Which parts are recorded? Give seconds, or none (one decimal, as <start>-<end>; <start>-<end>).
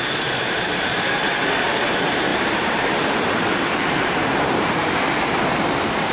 none